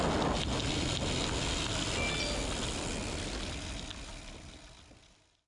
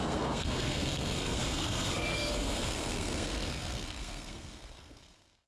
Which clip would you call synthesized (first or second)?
second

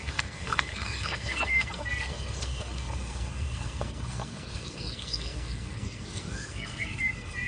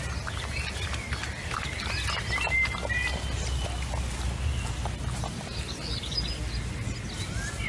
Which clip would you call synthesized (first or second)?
first